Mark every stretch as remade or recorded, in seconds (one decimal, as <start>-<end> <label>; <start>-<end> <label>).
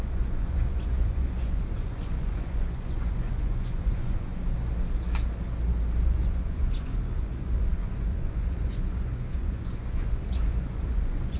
0.0-4.3 remade; 4.3-6.0 recorded; 6.0-11.4 remade